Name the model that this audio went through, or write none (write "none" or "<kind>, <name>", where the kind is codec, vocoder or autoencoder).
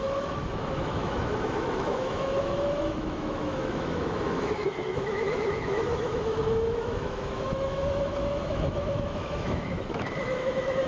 autoencoder, DAC-VAE